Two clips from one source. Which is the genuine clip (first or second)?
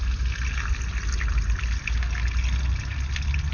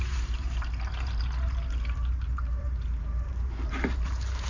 first